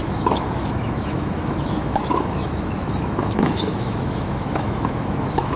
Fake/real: fake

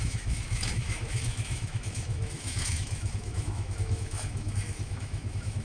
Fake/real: fake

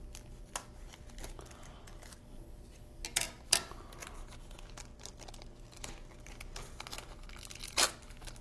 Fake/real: real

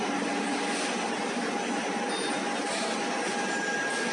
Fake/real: real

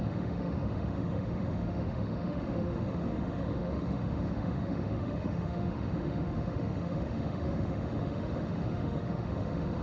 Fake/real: fake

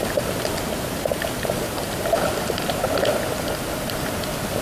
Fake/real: real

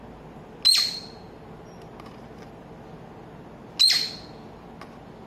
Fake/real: real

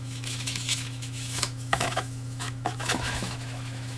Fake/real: fake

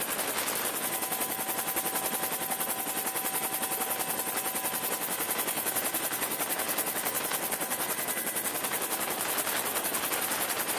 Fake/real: real